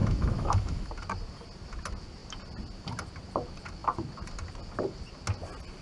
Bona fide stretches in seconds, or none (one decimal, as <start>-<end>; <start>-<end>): 0.9-5.8